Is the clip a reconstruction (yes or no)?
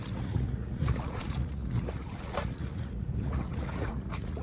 yes